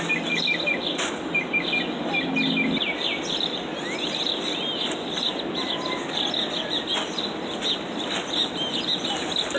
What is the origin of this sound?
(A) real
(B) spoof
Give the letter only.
A